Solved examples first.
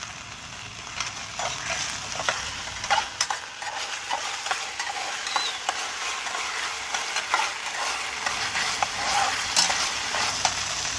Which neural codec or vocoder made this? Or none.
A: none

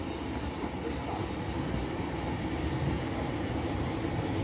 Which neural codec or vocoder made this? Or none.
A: none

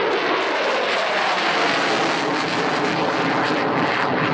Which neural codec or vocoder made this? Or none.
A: none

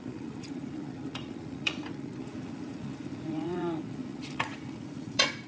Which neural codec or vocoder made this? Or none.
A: vocoder, Vocos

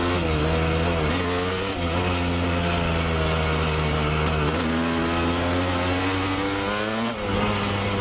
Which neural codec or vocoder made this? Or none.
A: none